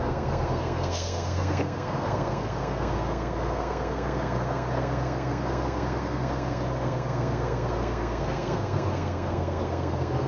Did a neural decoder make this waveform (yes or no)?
yes